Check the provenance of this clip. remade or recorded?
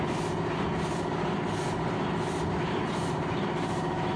recorded